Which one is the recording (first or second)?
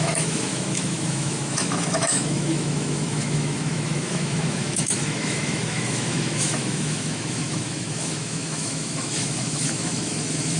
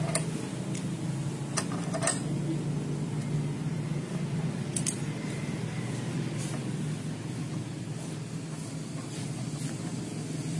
second